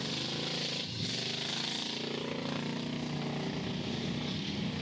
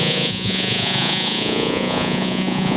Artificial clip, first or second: second